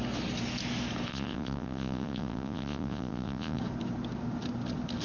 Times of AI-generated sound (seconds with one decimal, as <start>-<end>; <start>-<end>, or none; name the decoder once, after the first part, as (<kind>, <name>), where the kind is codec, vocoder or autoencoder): 1.1-3.6 (vocoder, Vocos)

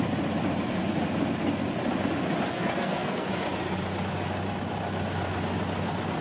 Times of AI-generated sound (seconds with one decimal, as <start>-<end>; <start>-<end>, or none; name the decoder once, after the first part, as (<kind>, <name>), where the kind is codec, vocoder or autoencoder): 2.5-3.3 (codec, SNAC)

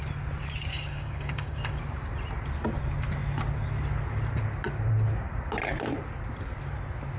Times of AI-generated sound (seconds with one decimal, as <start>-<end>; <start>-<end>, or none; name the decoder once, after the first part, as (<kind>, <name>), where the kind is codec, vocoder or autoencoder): 0.7-1.8 (codec, DAC)

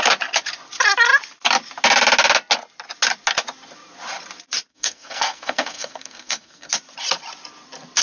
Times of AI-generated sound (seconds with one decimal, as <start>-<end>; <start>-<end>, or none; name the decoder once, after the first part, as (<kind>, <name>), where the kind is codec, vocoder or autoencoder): 4.7-6.7 (codec, SNAC)

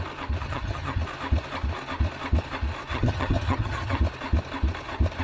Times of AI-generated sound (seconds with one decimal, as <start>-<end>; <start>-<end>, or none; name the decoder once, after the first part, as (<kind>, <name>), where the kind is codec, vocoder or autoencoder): 0.4-1.0 (vocoder, HiFi-GAN); 2.9-4.0

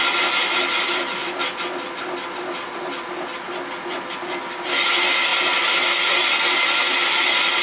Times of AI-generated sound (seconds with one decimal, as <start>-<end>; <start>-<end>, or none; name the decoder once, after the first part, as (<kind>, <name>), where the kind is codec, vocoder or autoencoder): none

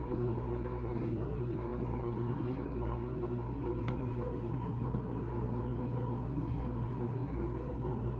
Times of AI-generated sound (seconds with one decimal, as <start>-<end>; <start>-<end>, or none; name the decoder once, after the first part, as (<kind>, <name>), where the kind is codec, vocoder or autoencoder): 0.0-8.2 (codec, SNAC)